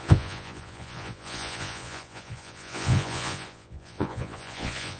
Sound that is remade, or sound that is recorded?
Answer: remade